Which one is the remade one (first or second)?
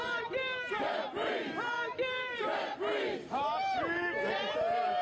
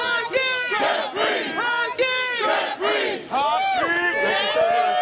first